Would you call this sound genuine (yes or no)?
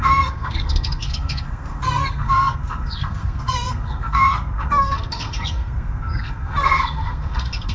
no